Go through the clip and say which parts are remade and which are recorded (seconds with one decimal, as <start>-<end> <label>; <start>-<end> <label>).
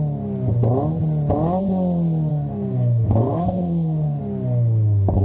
0.0-2.3 recorded; 2.3-4.2 remade; 4.2-5.2 recorded